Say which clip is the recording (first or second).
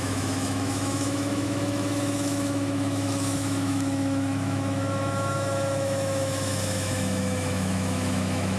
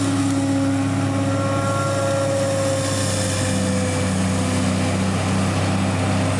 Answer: second